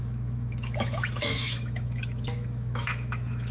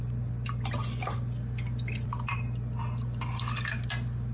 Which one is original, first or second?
second